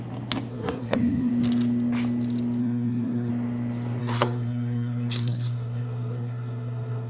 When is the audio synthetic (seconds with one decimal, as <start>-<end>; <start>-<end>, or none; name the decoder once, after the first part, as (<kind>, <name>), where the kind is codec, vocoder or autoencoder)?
0.5-1.3 (codec, SNAC); 2.6-3.3; 4.0-7.1